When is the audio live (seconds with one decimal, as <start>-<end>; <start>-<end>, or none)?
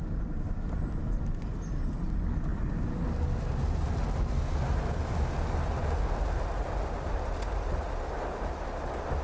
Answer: 0.0-9.2